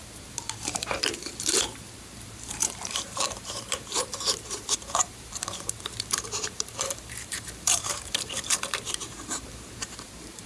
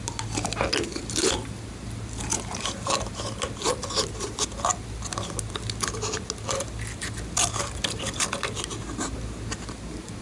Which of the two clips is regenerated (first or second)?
first